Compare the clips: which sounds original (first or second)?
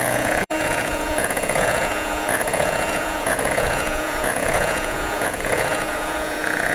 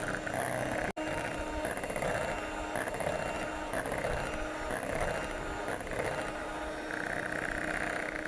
second